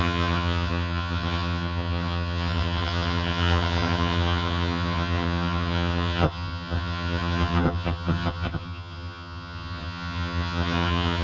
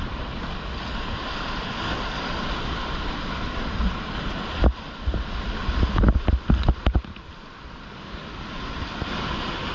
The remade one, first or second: first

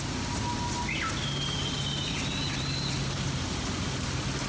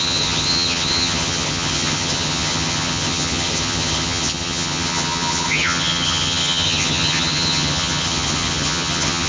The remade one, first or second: second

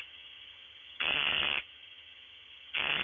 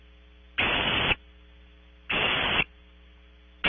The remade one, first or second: first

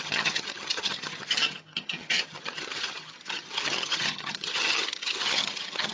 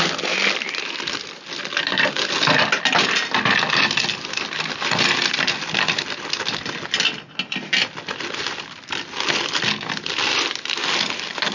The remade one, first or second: first